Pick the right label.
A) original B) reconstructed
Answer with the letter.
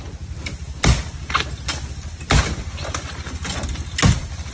A